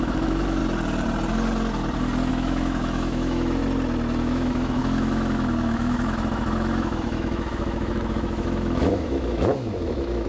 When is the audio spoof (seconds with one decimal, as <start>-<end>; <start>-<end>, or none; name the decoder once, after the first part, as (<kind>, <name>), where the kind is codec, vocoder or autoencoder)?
0.0-0.6 (autoencoder, DAC-VAE); 2.3-3.6; 4.2-10.3